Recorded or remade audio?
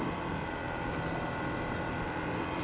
recorded